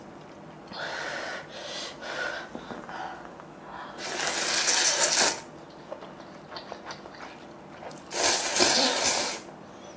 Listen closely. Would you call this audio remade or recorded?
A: recorded